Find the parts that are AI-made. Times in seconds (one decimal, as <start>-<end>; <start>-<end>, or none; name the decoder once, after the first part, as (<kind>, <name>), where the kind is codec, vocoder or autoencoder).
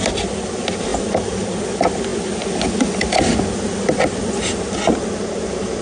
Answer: none